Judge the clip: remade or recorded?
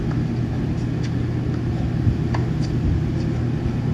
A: recorded